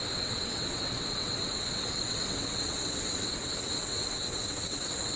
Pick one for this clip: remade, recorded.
remade